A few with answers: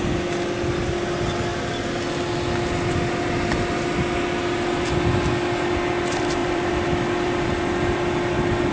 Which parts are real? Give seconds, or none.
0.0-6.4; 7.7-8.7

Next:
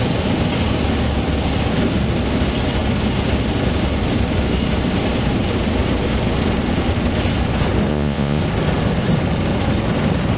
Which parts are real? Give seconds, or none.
0.0-7.9; 8.4-10.4

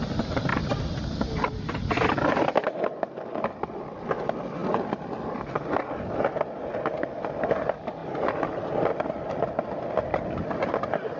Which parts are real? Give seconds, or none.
0.0-8.0; 9.9-11.2

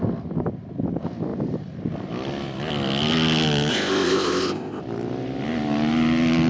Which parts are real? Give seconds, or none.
0.0-3.7; 4.8-6.5

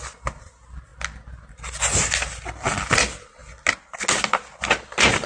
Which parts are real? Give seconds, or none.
0.0-5.3